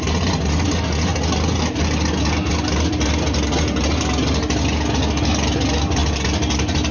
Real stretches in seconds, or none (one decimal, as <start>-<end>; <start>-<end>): 0.0-6.9